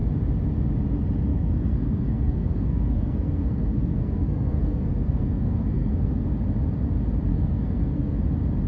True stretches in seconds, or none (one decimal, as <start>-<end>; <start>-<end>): 0.0-1.3; 6.3-7.3; 8.2-8.7